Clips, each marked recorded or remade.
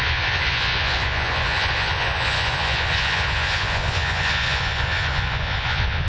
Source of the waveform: remade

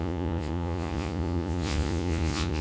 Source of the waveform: remade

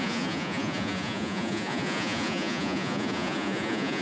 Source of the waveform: remade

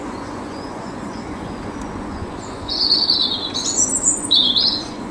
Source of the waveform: remade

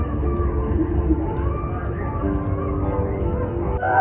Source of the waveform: recorded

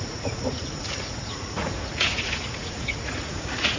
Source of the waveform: remade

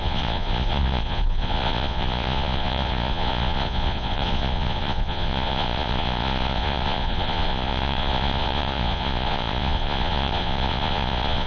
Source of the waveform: remade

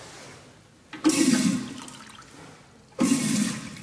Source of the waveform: recorded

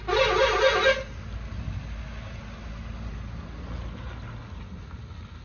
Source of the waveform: recorded